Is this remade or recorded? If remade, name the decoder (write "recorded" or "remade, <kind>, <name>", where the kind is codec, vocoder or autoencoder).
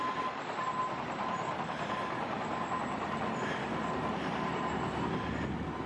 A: recorded